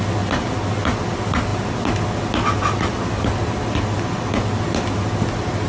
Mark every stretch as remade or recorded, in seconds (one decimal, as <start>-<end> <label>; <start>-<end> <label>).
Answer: 0.0-5.7 recorded